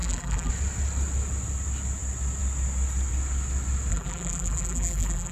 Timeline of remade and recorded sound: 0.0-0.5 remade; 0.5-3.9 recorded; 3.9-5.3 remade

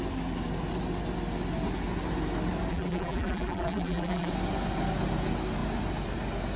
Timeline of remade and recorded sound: 0.0-2.7 recorded; 2.7-4.3 remade; 4.3-6.6 recorded

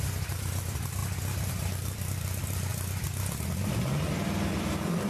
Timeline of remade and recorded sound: 0.0-1.0 remade; 1.0-1.5 recorded; 1.5-2.7 remade; 2.7-4.1 recorded; 4.1-5.1 remade

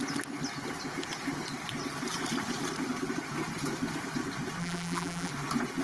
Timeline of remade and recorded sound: 0.0-4.6 recorded; 4.6-5.3 remade; 5.3-5.8 recorded

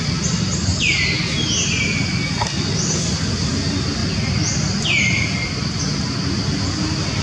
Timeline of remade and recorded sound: 0.0-7.2 recorded

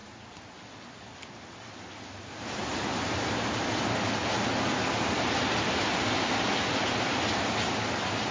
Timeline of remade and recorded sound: 0.0-1.5 recorded; 1.5-2.9 remade; 2.9-5.6 recorded; 5.6-8.3 remade